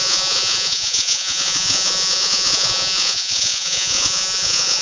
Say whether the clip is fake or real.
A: fake